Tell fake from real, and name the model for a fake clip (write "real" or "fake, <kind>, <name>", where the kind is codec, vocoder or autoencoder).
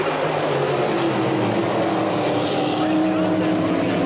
real